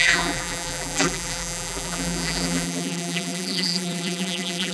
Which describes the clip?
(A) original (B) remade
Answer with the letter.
B